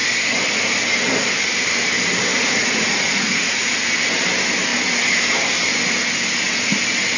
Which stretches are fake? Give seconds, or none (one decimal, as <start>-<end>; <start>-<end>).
2.3-3.7